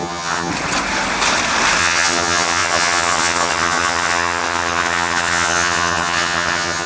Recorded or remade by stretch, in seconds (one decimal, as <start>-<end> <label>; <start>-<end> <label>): 0.0-0.5 remade; 0.5-1.8 recorded; 1.8-6.9 remade